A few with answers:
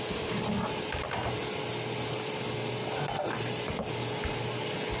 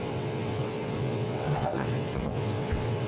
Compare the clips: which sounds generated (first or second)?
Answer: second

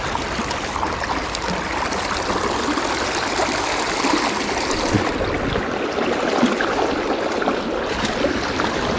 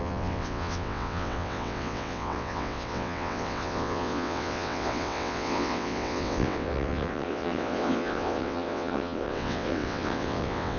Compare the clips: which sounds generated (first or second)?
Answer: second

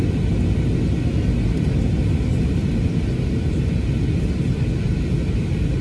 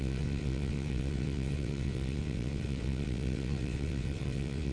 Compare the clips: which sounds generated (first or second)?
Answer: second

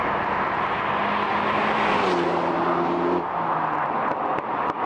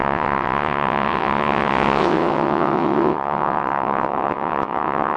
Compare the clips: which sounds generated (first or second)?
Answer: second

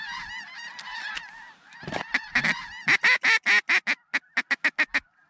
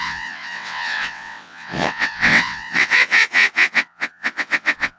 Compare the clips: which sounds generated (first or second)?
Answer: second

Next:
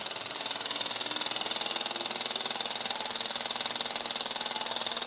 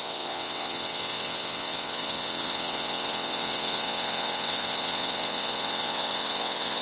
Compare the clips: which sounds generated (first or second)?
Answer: second